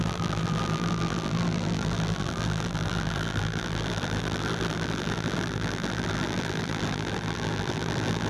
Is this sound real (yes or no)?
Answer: no